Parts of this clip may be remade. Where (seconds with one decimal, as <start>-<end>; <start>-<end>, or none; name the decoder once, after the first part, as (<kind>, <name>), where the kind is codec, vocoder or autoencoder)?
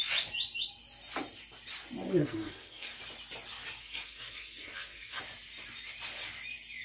2.2-3.0 (codec, SNAC); 3.8-5.2